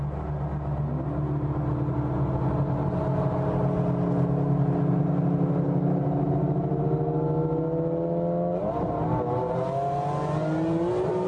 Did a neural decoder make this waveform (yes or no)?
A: no